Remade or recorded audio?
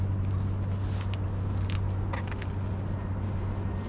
recorded